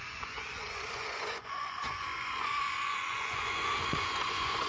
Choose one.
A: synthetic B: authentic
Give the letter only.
A